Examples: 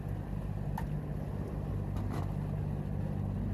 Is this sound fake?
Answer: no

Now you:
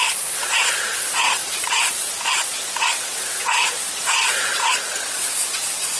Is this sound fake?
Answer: yes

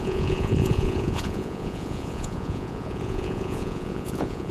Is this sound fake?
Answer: yes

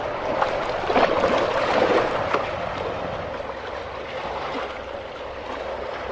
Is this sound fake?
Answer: no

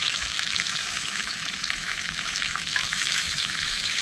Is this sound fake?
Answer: yes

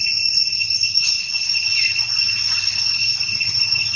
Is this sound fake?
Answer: no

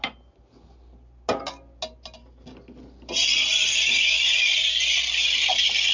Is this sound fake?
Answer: no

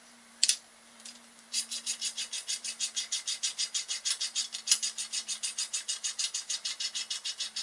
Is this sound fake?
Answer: yes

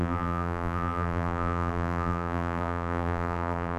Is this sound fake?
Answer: yes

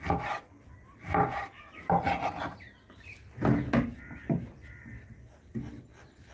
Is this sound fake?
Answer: no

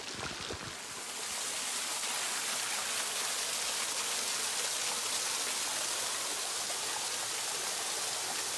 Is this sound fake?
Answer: no